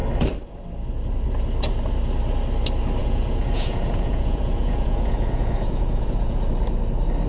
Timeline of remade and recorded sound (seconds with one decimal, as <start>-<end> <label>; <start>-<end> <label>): 0.0-3.0 recorded; 3.0-6.5 remade; 6.5-7.3 recorded